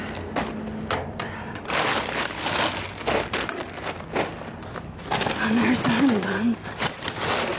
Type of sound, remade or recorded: recorded